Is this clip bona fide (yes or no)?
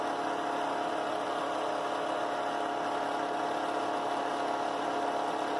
yes